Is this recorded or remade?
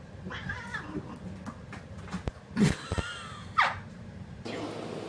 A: recorded